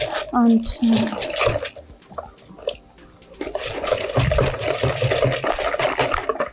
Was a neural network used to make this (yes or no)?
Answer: no